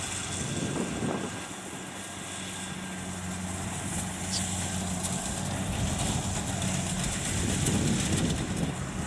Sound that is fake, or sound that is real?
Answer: real